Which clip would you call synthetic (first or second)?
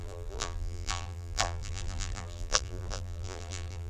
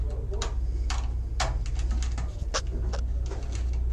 first